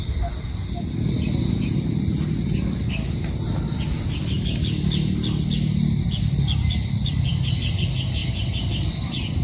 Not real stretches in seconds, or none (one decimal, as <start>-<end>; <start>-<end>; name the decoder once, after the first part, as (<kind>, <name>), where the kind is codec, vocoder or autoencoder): none